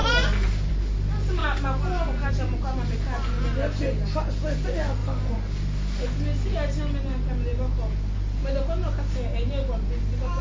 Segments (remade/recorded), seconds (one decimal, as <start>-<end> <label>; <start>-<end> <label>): 0.0-10.4 recorded